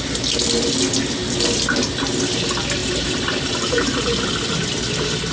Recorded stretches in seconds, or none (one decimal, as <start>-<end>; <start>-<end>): 0.0-2.8; 4.3-5.3